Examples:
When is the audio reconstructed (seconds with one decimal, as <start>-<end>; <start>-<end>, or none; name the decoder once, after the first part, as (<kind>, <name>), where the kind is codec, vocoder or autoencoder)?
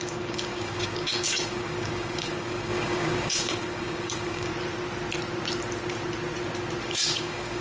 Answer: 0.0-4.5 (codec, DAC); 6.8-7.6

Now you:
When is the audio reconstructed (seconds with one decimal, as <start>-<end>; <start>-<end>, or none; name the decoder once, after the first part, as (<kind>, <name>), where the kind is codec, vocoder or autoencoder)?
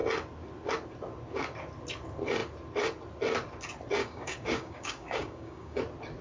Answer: 4.0-5.8 (codec, DAC)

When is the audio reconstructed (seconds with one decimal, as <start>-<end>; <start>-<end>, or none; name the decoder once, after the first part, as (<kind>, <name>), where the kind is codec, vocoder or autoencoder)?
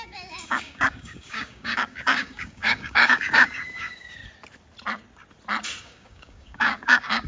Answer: 0.0-4.2 (codec, DAC); 5.8-7.3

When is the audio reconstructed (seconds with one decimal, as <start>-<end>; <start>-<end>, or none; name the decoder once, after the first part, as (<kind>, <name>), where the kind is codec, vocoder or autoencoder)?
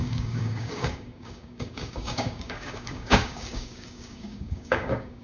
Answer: 0.0-5.2 (codec, DAC)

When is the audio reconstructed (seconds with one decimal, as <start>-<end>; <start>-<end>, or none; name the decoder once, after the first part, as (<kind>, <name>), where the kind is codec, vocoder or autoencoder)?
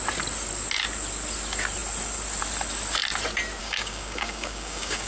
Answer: 3.6-5.1 (codec, DAC)